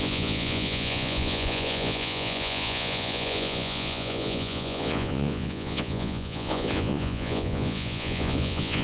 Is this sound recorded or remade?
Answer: remade